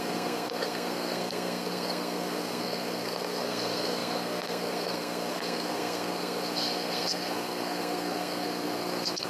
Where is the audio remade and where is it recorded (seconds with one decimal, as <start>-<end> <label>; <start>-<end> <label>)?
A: 0.0-9.3 remade